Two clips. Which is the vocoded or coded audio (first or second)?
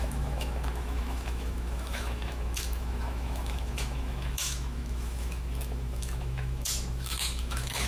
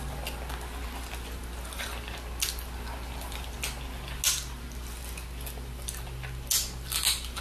first